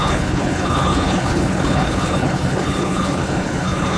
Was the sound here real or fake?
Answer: fake